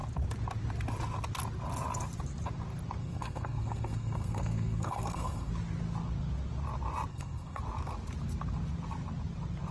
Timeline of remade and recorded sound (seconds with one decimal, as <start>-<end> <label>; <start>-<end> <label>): 0.0-3.0 recorded; 3.0-5.5 remade; 5.5-7.1 recorded; 7.1-7.6 remade; 7.6-9.7 recorded